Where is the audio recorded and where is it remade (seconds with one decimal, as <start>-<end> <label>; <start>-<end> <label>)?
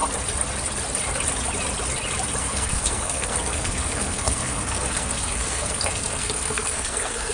0.0-2.4 recorded; 2.4-7.3 remade